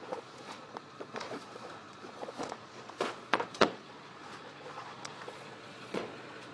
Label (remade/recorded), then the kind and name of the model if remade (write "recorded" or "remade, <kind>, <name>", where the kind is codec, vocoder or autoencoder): remade, vocoder, Vocos